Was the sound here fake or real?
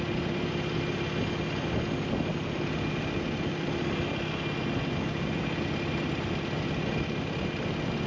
real